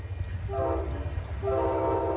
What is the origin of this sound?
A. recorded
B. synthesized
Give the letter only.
A